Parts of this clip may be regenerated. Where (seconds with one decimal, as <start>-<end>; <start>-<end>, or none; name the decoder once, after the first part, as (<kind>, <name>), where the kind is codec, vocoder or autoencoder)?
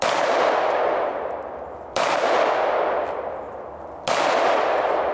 none